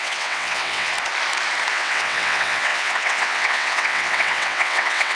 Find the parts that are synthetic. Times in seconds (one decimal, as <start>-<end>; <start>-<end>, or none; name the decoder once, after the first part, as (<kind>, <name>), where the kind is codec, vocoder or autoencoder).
0.0-0.9 (vocoder, WaveNeXt); 1.7-5.1